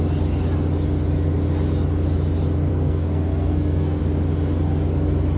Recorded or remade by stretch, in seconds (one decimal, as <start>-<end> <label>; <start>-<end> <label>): 0.0-2.7 recorded; 2.7-4.0 remade; 4.0-5.4 recorded